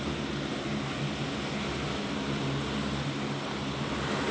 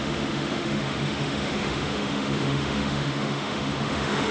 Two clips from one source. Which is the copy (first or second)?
second